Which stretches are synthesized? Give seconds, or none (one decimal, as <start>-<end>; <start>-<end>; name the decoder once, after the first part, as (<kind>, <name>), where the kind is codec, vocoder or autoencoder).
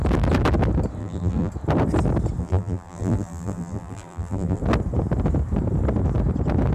1.0-1.5 (vocoder, BigVGAN v2); 2.4-4.6